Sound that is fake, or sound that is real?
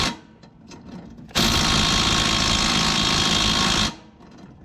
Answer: real